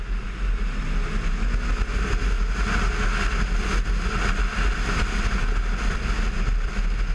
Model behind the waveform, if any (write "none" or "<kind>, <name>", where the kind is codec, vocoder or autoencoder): none